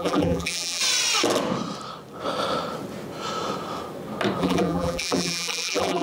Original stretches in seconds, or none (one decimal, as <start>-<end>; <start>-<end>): 0.8-4.4